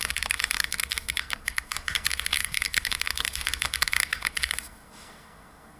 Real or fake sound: fake